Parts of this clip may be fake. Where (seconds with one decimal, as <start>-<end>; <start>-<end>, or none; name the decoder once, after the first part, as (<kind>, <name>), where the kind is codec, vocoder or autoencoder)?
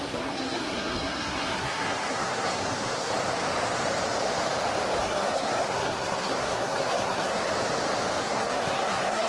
0.0-3.1 (codec, SNAC); 5.0-7.4; 8.2-9.3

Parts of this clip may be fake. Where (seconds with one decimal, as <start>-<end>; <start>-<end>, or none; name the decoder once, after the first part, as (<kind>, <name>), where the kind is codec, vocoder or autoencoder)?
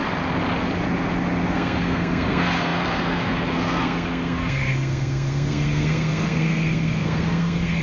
1.5-7.8 (codec, SNAC)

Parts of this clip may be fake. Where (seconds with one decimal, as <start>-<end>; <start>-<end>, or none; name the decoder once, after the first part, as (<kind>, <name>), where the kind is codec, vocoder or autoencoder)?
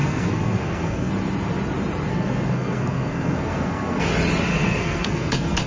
0.0-1.1 (codec, SNAC); 2.1-4.1; 4.5-5.7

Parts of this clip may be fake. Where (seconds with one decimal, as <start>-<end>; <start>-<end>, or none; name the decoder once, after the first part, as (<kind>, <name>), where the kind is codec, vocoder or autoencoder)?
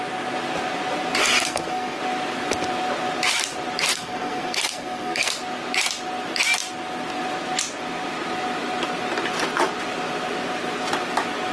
1.2-2.0 (codec, SNAC); 3.9-5.3